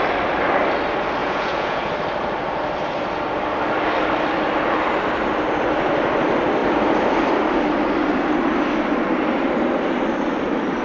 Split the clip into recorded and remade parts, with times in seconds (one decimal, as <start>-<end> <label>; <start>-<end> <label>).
0.0-1.2 recorded; 1.2-1.9 remade; 1.9-10.8 recorded